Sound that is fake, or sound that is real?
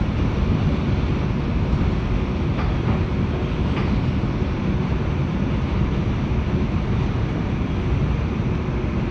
real